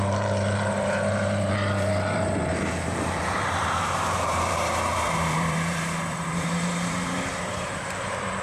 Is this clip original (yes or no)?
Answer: no